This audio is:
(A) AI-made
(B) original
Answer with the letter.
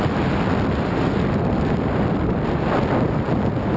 B